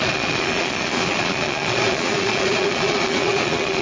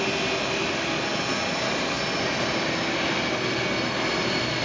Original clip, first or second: second